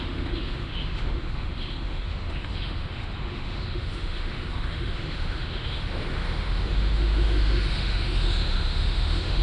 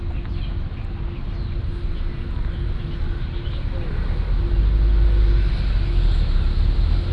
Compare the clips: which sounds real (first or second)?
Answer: second